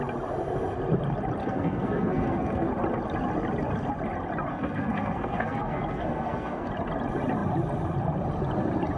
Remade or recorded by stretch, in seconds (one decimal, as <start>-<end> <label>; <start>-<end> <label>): 0.0-1.4 recorded; 1.4-2.7 remade; 2.7-4.5 recorded; 4.5-6.7 remade; 6.7-9.0 recorded